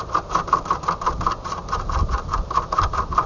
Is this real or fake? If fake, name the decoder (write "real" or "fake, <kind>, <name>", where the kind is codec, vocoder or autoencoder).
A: fake, vocoder, BigVGAN v2